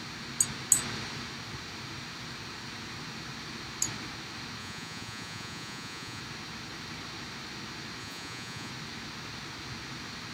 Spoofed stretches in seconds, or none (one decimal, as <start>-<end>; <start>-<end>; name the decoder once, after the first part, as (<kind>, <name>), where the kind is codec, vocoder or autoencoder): 4.6-6.2 (vocoder, Vocos); 8.0-8.7